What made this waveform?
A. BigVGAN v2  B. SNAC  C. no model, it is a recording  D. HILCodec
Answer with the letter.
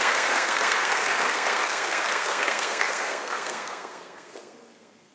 B